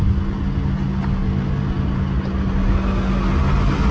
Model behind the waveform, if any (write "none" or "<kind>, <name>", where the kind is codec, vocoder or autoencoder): none